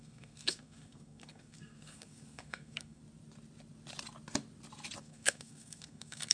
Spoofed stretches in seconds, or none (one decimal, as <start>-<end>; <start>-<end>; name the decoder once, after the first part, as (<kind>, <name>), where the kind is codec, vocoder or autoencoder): 0.0-3.0 (codec, SNAC); 5.0-6.3

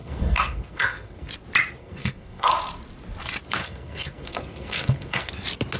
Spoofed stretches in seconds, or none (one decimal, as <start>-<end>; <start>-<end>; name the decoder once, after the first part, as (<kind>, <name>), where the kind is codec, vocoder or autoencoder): 0.0-1.3 (codec, SNAC); 1.8-2.5; 3.6-5.3

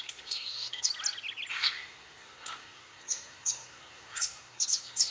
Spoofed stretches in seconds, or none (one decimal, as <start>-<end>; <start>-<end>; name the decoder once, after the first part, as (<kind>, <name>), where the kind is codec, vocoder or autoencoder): 0.0-0.9 (codec, SNAC); 1.5-5.1

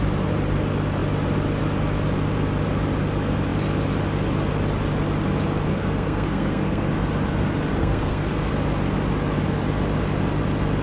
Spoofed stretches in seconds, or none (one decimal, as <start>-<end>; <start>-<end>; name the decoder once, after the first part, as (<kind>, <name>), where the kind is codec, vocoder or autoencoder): 5.7-6.9 (codec, SNAC); 7.8-8.5

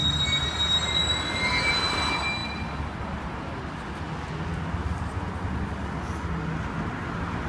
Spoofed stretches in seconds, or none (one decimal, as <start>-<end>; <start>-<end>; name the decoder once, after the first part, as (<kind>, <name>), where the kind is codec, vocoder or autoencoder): none

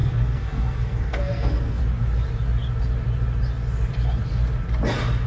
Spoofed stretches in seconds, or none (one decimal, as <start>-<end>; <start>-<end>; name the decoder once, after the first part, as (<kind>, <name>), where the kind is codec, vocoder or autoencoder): 0.0-1.8 (codec, SNAC)